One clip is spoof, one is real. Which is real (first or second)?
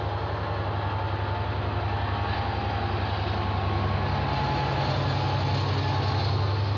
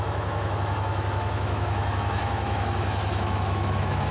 first